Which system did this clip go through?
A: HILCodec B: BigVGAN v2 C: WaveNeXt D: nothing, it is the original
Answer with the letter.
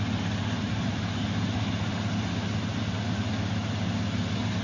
D